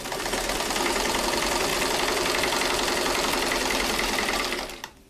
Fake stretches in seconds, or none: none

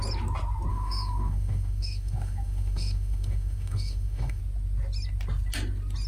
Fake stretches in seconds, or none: 0.7-4.4 (autoencoder, DAC-VAE)

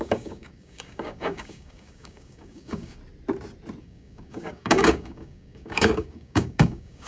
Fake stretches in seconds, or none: 0.0-3.0 (codec, DAC); 3.8-7.1

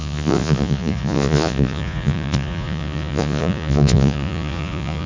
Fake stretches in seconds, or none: 0.0-5.1 (vocoder, Vocos)

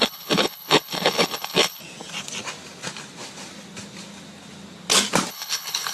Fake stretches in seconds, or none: 0.0-1.8 (codec, HILCodec); 5.3-5.9